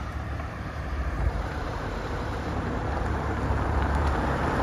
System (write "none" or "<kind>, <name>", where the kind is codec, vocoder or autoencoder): vocoder, BigVGAN v2